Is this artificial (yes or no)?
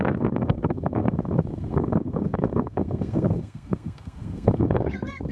yes